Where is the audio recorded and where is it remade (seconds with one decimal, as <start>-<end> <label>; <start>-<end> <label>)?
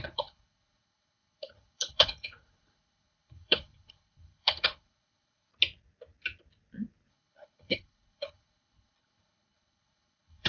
0.0-5.5 remade; 5.5-7.1 recorded; 7.1-10.5 remade